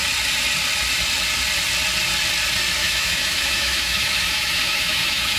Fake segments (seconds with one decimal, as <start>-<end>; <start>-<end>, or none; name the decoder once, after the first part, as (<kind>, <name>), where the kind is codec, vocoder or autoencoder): 2.8-5.4 (autoencoder, DAC-VAE)